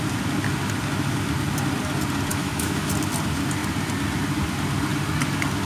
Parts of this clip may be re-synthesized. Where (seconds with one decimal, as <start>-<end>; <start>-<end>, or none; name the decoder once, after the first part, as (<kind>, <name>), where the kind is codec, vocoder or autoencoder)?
2.3-2.9 (autoencoder, DAC-VAE)